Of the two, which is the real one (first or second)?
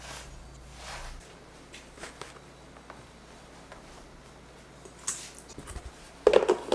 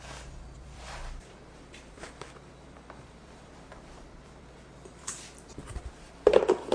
first